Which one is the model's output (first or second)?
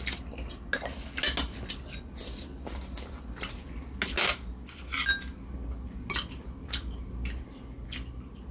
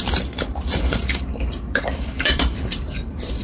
second